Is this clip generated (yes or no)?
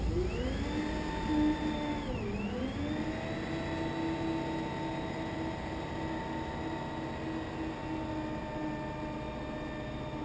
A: no